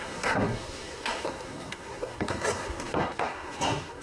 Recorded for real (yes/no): no